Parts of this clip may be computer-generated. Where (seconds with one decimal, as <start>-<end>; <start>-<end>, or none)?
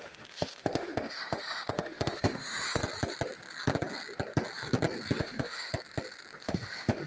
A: 0.0-2.8; 5.2-5.7; 6.4-7.1